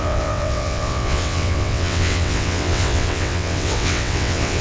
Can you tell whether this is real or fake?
fake